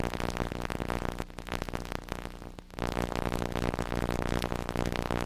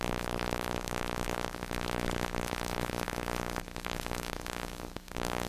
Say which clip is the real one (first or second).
first